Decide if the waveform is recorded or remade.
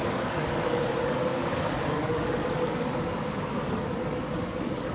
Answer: remade